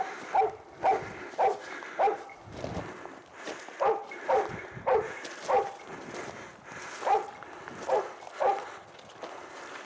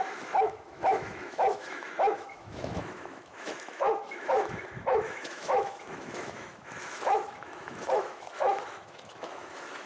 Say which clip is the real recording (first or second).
first